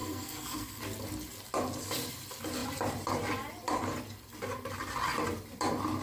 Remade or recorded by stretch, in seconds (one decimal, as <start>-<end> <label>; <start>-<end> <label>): 0.0-0.8 remade; 0.8-6.0 recorded